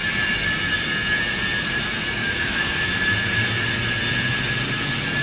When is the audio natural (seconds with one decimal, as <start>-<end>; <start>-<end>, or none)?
0.0-2.2; 2.9-5.2